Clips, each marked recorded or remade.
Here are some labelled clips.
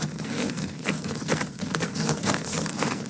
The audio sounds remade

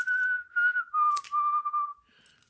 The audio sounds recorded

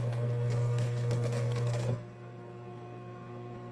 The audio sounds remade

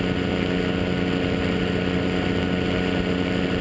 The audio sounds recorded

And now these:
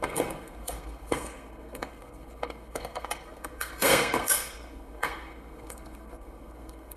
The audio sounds remade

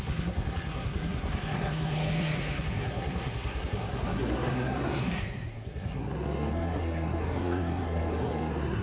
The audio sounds remade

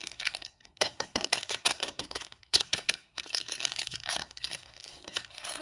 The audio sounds remade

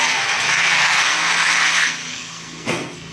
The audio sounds remade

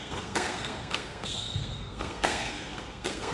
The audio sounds remade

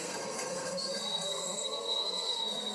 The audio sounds remade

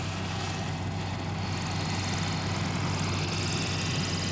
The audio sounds recorded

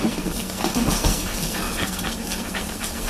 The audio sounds remade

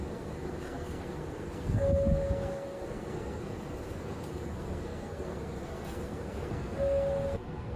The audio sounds remade